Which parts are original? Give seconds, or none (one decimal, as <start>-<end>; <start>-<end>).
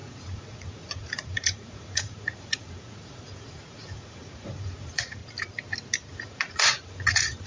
5.2-6.1